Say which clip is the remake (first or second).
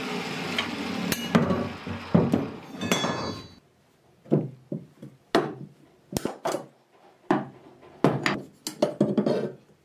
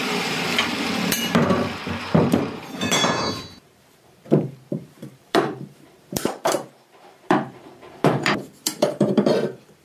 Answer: second